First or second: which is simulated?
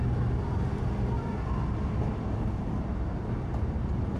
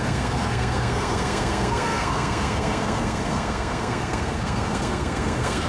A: second